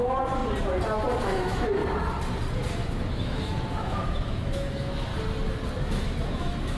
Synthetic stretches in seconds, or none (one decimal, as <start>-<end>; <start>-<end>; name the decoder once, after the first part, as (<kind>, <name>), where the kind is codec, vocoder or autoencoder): 0.0-0.4 (autoencoder, DAC-VAE); 1.2-1.8; 2.7-5.1; 5.8-6.8